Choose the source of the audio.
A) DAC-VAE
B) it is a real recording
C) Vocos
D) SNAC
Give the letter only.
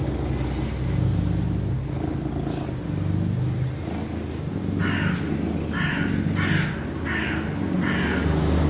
B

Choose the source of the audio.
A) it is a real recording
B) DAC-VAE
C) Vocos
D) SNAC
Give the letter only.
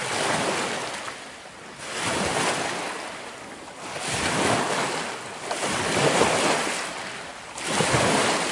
A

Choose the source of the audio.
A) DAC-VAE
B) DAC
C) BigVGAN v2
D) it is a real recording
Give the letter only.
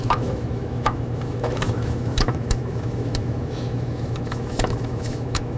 A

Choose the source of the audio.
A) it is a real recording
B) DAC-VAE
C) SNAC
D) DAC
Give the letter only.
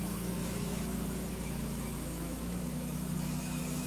B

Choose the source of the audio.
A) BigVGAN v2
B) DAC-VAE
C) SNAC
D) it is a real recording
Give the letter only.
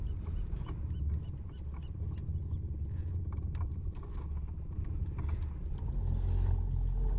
D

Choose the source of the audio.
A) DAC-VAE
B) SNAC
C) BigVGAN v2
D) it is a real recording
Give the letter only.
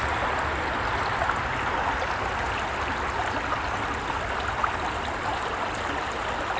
D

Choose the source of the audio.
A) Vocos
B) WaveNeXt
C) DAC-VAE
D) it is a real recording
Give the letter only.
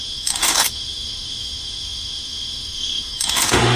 C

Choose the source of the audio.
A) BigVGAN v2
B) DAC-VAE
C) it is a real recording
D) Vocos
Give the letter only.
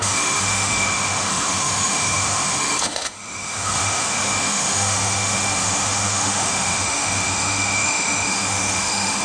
B